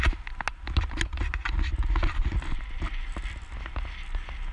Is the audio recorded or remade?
recorded